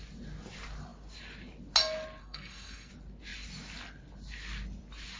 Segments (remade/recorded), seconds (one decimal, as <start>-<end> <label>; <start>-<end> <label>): 0.0-2.2 recorded; 2.2-2.9 remade; 2.9-5.2 recorded